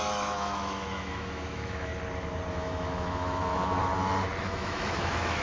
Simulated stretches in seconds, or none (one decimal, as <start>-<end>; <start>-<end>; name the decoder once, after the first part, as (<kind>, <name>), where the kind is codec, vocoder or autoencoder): 0.0-1.9 (autoencoder, DAC-VAE); 2.5-3.9; 4.4-5.4